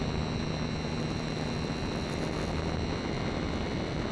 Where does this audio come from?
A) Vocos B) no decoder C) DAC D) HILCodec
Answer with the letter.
B